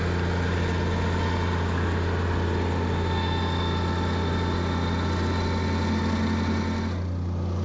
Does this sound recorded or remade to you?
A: recorded